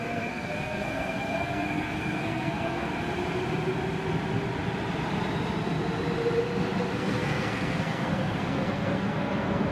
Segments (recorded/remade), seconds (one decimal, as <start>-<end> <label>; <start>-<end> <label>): 0.0-2.9 remade; 2.9-6.9 recorded; 6.9-9.7 remade